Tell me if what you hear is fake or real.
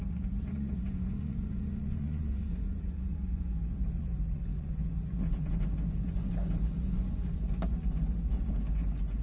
fake